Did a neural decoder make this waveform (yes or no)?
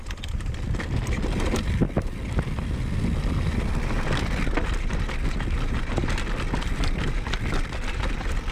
no